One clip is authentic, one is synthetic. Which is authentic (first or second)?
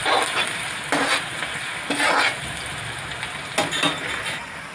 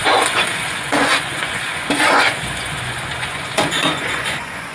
first